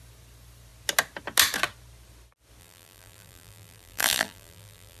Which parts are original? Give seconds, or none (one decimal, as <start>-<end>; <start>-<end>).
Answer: 0.0-2.6